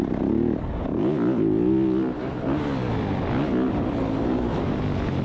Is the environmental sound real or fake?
real